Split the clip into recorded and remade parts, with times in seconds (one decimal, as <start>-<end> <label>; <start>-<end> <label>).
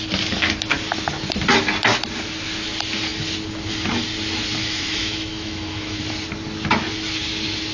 0.0-4.6 recorded; 4.6-6.0 remade; 6.0-7.7 recorded